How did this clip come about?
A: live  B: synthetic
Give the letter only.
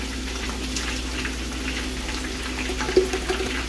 A